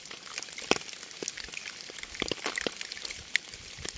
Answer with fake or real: fake